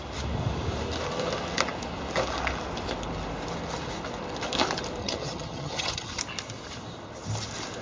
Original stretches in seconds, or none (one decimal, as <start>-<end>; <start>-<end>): 0.0-5.0; 6.2-7.8